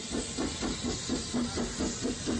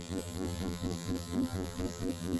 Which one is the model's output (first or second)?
second